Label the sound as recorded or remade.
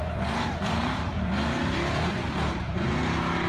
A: remade